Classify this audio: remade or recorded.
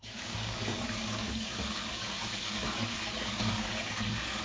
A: remade